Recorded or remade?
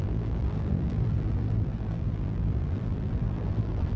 remade